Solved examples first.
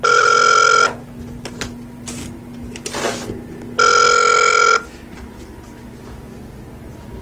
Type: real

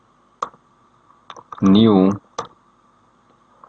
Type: real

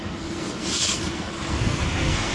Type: fake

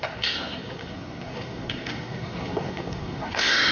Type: fake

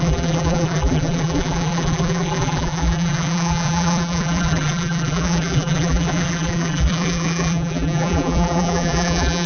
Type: fake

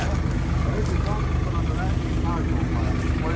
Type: real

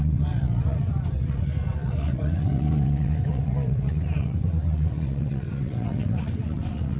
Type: fake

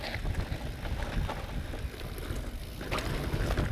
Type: real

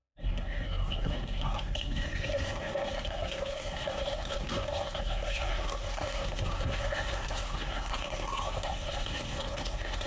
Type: fake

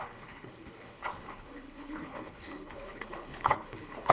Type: fake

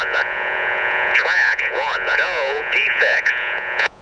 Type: fake